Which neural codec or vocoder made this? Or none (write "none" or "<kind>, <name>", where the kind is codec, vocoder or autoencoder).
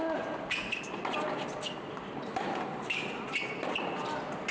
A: none